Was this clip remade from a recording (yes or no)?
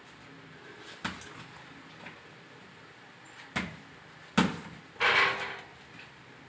no